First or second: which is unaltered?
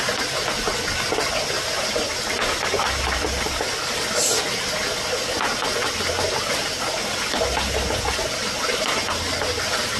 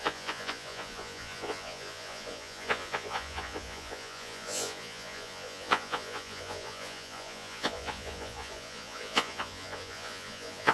first